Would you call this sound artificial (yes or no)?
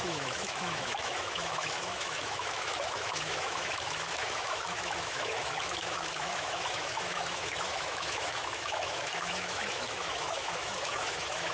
yes